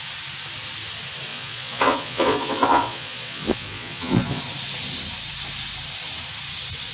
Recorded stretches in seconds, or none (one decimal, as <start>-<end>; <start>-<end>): 0.0-1.3; 4.4-6.9